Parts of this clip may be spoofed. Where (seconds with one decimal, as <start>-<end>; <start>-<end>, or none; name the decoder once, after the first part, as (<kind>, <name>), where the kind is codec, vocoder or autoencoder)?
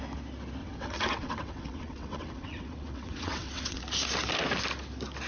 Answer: 0.6-3.8 (vocoder, WaveNeXt)